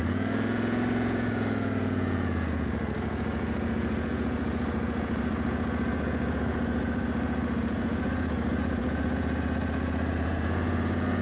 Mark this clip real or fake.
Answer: fake